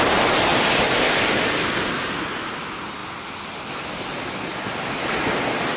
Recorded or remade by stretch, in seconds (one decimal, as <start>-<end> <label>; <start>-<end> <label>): 0.0-5.8 recorded